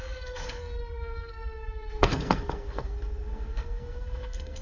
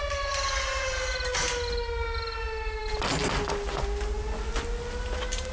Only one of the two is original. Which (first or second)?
second